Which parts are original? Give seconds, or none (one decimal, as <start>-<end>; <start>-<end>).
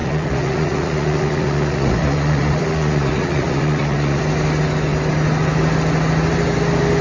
4.2-7.0